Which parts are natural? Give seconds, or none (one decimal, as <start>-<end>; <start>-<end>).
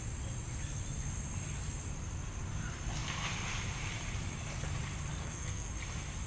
0.0-5.2; 5.7-6.3